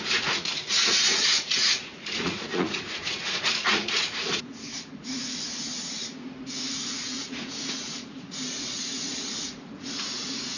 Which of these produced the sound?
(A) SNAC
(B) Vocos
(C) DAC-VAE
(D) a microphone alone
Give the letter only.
B